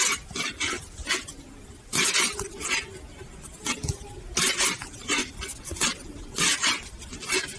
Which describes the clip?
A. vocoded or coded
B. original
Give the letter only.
B